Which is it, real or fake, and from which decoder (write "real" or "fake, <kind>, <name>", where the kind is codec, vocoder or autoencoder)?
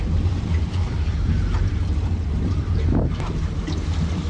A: fake, vocoder, BigVGAN v2